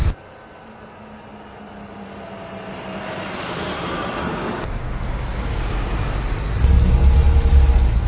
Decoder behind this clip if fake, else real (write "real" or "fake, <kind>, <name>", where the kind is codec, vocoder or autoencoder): real